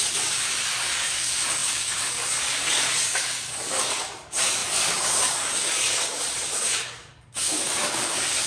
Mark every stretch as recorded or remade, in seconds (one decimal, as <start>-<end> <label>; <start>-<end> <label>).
0.0-8.5 remade